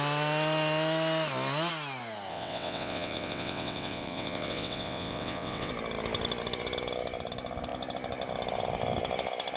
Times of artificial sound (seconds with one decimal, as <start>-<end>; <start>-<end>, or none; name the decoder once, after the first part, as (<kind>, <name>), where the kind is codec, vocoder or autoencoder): 2.3-5.7 (vocoder, WaveNeXt)